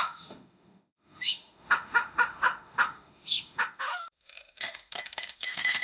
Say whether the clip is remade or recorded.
remade